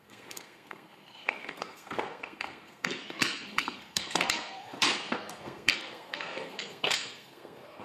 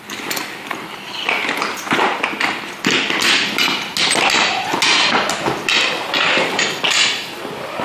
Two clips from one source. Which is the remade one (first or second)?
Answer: first